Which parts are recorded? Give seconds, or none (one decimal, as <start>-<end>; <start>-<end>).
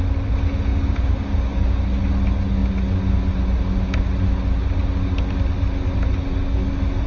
0.0-0.7; 1.8-7.1